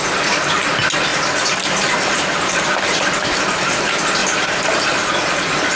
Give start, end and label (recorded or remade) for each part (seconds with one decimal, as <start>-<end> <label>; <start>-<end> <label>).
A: 0.0-1.1 recorded; 1.1-3.8 remade; 3.8-4.2 recorded; 4.2-5.1 remade; 5.1-5.8 recorded